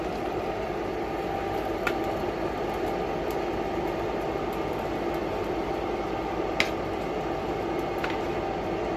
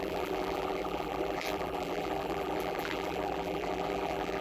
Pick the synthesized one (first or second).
second